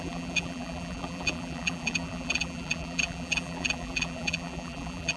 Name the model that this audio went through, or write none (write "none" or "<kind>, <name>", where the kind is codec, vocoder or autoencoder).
vocoder, BigVGAN v2